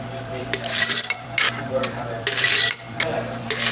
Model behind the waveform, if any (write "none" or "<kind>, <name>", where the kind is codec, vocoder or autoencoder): vocoder, BigVGAN v2